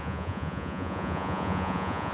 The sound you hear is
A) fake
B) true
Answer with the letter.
A